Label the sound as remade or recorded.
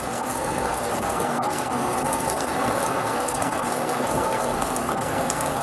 remade